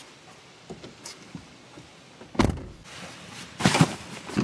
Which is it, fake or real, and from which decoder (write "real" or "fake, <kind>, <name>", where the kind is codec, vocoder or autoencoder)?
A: real